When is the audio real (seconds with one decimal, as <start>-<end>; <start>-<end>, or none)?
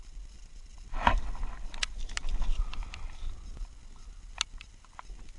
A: 0.0-5.4